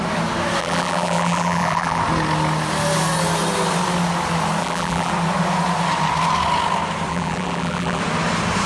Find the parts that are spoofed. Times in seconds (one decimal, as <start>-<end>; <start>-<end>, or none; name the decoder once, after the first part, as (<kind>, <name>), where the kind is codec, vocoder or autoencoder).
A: 0.6-2.0 (vocoder, BigVGAN v2); 4.6-5.1; 7.1-8.0